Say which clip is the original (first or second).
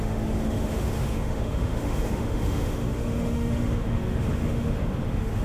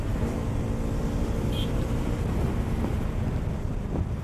second